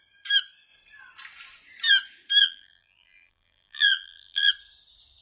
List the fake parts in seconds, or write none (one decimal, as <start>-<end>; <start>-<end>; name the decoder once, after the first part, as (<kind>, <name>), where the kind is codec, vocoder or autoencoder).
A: 2.4-4.5 (vocoder, BigVGAN v2)

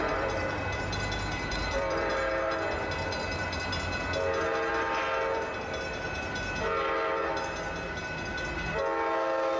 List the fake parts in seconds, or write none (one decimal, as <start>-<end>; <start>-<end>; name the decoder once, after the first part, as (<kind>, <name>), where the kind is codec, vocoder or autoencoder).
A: 0.0-2.1 (vocoder, BigVGAN v2)

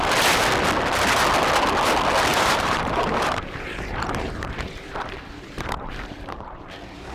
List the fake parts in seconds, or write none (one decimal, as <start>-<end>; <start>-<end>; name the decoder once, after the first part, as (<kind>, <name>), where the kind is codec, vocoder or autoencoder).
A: 2.3-6.6 (vocoder, BigVGAN v2)